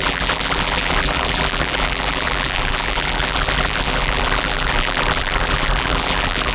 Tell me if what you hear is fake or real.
fake